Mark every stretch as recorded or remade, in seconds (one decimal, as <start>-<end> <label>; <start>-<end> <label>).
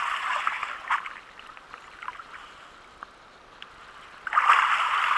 0.0-2.4 remade; 2.4-4.5 recorded; 4.5-5.2 remade